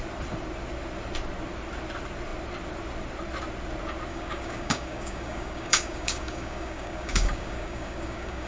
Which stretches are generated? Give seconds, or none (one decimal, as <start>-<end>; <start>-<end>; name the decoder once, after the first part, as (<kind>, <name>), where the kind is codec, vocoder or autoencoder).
4.1-8.5 (codec, DAC)